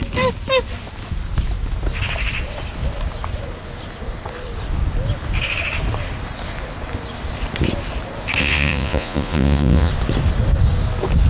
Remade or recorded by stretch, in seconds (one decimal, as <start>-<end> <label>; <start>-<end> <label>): 0.0-8.4 recorded; 8.4-9.9 remade; 9.9-11.3 recorded